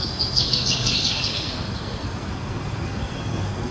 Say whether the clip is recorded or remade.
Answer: remade